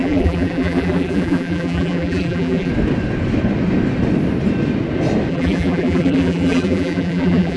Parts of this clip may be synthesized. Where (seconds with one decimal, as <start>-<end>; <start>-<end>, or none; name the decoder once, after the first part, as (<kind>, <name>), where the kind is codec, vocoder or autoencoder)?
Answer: 0.0-2.7 (vocoder, BigVGAN v2); 5.3-7.6